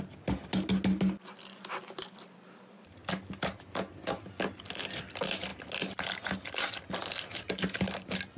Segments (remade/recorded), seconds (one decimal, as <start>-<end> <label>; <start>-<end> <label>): 0.0-8.4 recorded